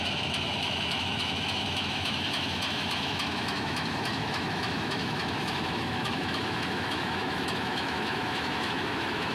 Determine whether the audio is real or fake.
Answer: fake